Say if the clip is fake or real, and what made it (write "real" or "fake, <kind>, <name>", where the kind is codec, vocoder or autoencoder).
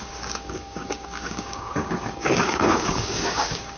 fake, codec, DAC